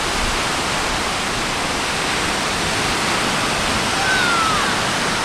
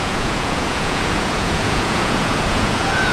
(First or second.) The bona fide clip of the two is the first